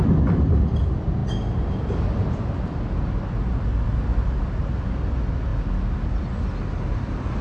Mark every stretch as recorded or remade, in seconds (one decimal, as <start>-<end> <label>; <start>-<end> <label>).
0.0-7.4 recorded